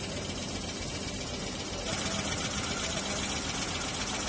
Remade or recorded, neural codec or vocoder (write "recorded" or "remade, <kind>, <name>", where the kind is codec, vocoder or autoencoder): recorded